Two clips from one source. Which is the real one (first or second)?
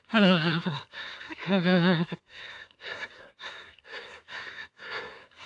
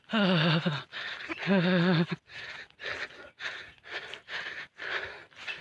second